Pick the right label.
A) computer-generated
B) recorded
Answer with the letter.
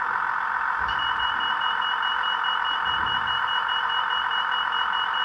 B